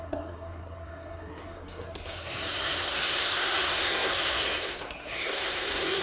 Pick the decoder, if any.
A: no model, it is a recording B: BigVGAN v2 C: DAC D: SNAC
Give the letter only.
D